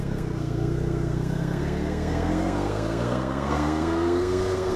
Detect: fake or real fake